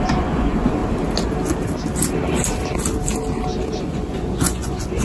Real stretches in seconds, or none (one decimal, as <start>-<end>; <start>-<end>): 0.8-3.8